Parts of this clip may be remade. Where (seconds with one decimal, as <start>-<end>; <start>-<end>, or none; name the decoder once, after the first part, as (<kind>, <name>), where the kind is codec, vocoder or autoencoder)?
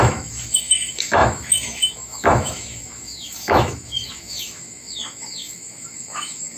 0.0-6.6 (autoencoder, DAC-VAE)